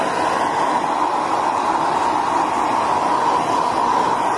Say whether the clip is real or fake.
real